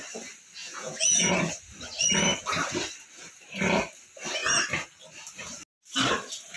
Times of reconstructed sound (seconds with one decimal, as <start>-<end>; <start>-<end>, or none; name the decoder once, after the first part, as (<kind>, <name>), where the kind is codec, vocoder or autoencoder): 0.6-1.3 (vocoder, Vocos)